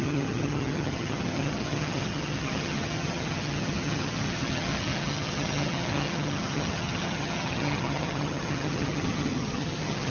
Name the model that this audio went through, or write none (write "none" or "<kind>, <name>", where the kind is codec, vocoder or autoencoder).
vocoder, HiFi-GAN